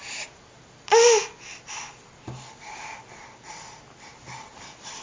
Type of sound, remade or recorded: recorded